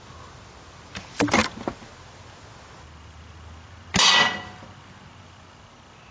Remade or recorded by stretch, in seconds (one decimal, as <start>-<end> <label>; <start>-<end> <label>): 0.0-6.1 recorded

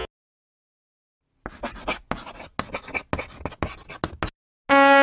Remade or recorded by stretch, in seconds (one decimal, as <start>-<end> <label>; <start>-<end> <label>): 0.0-5.0 recorded

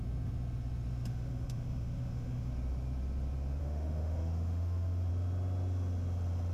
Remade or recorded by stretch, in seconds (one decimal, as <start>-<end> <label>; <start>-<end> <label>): 0.0-1.1 recorded; 1.1-2.5 remade; 2.5-3.6 recorded; 3.6-5.1 remade; 5.1-6.5 recorded